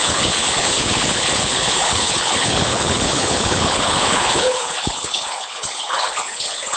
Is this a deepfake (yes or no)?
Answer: yes